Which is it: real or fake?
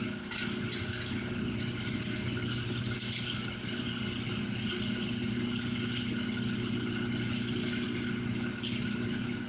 real